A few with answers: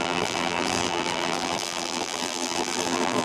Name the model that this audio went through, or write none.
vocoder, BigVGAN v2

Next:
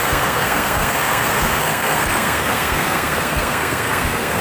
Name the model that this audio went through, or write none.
codec, SNAC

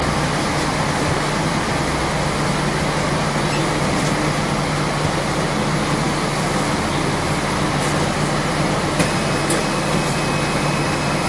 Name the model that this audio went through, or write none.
none